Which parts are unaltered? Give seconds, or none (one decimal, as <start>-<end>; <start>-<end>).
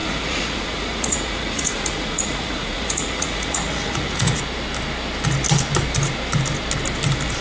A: 4.4-7.4